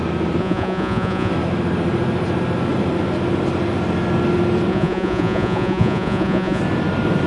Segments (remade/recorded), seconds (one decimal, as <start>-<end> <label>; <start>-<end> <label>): 0.0-0.4 recorded; 0.4-1.3 remade; 1.3-4.7 recorded; 4.7-6.6 remade; 6.6-7.3 recorded